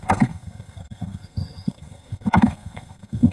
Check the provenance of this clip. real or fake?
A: fake